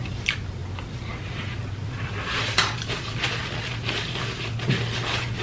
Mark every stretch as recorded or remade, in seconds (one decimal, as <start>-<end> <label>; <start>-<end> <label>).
0.0-5.4 recorded